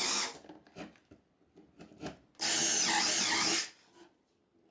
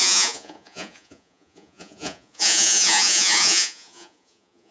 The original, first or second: first